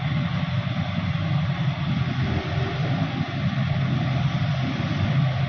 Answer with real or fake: real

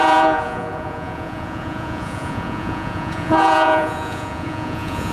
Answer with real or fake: fake